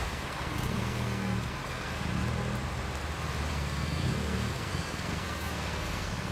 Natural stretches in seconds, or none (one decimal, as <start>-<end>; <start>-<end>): 2.0-3.5